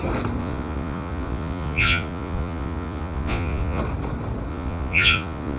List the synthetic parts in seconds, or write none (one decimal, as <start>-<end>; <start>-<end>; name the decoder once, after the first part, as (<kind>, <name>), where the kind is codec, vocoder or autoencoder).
0.4-3.8 (vocoder, Vocos); 4.5-5.6